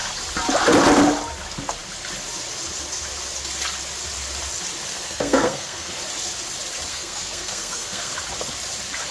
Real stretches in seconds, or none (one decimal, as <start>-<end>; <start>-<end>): 0.0-4.9; 5.9-6.9; 8.1-9.1